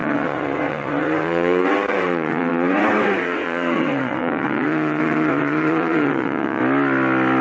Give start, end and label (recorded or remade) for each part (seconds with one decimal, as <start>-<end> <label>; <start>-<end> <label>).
0.0-6.6 remade; 6.6-7.4 recorded